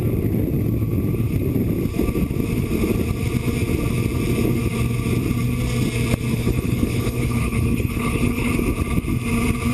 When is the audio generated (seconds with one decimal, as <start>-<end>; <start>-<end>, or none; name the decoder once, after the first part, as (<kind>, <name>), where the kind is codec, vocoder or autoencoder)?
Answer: 6.3-8.5 (codec, HILCodec)